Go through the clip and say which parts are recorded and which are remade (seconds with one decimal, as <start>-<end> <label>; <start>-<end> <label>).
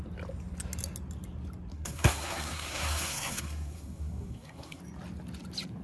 0.0-1.7 recorded; 1.7-4.8 remade; 4.8-5.8 recorded